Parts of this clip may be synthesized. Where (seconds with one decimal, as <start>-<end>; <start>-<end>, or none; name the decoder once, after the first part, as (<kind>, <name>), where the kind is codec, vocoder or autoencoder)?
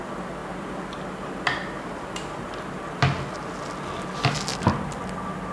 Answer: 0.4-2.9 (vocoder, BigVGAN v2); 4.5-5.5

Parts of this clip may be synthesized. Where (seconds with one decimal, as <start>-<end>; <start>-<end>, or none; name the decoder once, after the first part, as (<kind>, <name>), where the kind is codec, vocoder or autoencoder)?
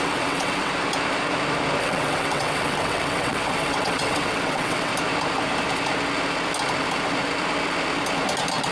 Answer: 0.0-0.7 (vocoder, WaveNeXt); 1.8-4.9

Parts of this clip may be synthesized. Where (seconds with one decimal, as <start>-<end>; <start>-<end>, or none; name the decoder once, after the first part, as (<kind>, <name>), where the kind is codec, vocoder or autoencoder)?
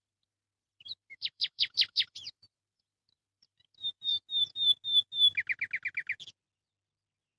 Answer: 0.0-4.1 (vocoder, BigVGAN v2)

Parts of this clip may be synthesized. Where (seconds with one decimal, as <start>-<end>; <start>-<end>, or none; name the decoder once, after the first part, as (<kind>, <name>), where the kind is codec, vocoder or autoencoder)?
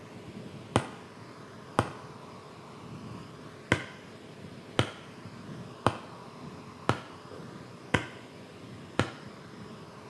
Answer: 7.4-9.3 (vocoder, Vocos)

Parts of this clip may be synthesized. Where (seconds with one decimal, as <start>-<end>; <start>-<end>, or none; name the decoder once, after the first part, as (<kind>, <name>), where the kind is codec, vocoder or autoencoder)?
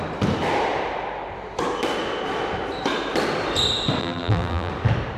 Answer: 4.0-4.7 (vocoder, BigVGAN v2)